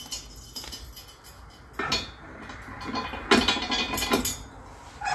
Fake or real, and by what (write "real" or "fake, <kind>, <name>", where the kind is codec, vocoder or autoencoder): real